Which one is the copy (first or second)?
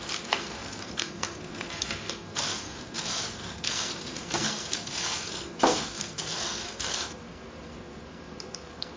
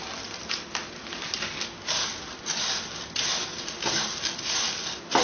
first